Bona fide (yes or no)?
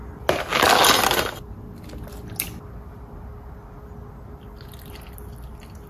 yes